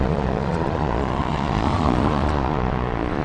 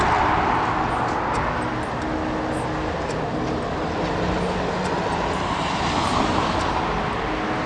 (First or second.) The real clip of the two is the second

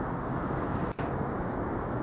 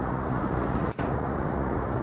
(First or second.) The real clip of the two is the first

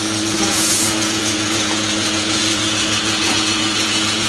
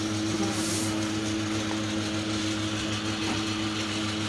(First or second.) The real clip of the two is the second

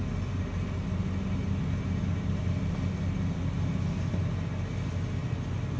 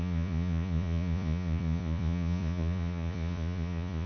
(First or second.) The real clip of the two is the first